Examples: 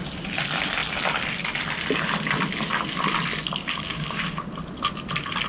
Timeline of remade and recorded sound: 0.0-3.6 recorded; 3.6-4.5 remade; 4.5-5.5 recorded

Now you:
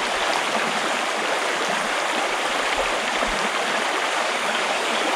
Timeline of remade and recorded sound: 0.0-4.2 recorded; 4.2-5.2 remade

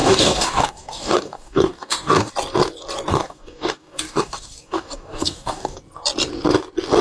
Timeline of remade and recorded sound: 0.0-2.3 remade; 2.3-3.1 recorded; 3.1-5.8 remade; 5.8-7.0 recorded

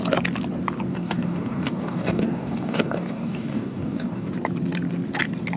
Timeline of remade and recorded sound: 0.0-0.9 recorded; 0.9-4.3 remade; 4.3-5.6 recorded

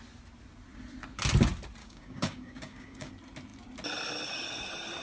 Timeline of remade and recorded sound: 0.0-1.8 recorded; 1.8-3.1 remade; 3.1-5.0 recorded

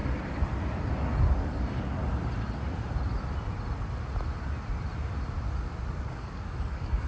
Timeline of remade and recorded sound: 0.0-1.4 recorded; 1.4-2.0 remade; 2.0-5.9 recorded; 5.9-7.1 remade

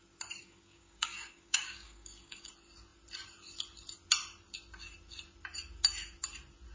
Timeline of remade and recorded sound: 0.0-0.4 recorded; 0.4-2.5 remade; 2.5-6.7 recorded

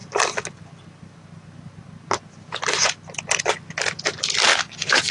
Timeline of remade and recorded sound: 0.0-4.5 recorded; 4.5-5.1 remade